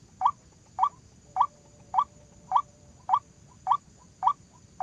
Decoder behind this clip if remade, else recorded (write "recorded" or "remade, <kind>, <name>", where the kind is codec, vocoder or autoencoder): recorded